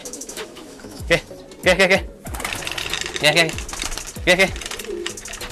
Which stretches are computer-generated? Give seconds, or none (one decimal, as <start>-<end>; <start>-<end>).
0.0-1.0